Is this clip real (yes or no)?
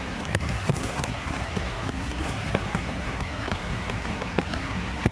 no